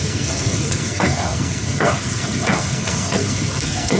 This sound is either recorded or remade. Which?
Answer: remade